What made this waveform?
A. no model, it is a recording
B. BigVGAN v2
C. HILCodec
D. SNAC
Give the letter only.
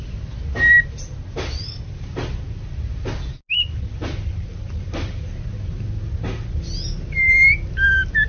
A